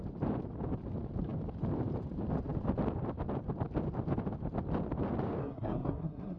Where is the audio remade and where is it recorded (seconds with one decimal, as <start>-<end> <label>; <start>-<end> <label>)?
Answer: 0.0-5.4 recorded; 5.4-6.4 remade